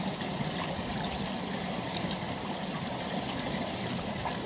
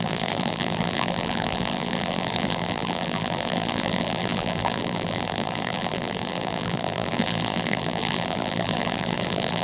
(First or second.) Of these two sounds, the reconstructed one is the second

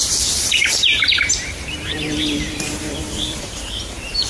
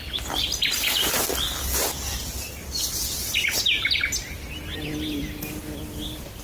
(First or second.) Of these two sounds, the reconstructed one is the first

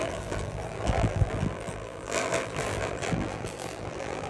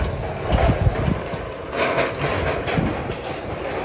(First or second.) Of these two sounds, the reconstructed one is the first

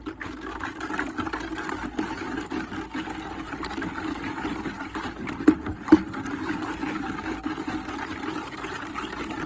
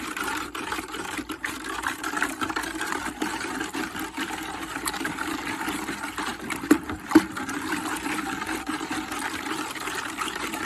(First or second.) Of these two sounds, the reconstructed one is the second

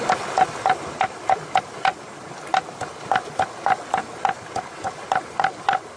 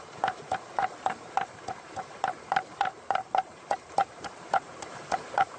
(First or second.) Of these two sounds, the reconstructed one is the second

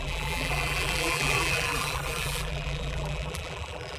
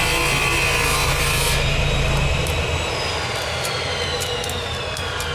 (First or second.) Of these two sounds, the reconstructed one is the first